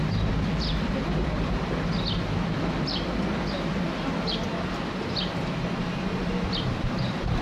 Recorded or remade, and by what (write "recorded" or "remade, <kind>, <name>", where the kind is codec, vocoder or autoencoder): remade, vocoder, BigVGAN v2